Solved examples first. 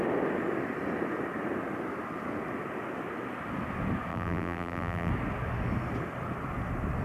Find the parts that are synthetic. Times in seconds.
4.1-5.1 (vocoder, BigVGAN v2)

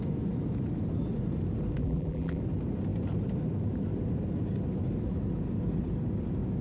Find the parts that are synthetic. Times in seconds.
1.8-2.4 (vocoder, BigVGAN v2)

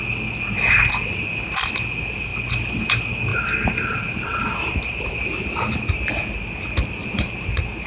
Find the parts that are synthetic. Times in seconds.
3.3-6.1 (vocoder, BigVGAN v2); 7.0-7.9

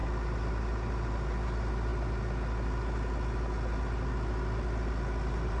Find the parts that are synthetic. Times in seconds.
none

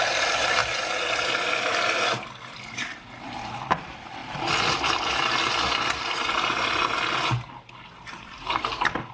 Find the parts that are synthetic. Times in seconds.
0.0-0.6 (vocoder, BigVGAN v2); 1.7-9.1

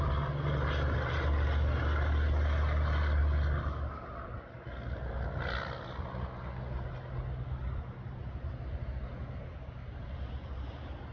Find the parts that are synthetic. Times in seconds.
none

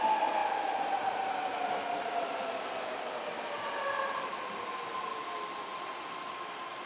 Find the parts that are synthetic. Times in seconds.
none

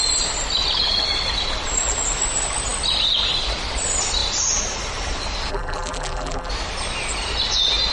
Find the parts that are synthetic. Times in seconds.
5.5-6.5 (vocoder, BigVGAN v2)